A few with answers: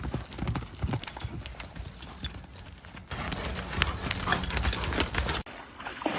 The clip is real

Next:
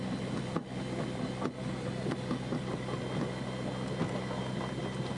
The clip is real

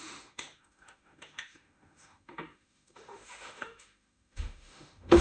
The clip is fake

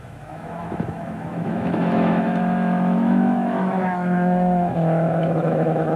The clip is fake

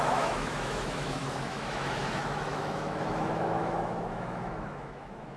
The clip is fake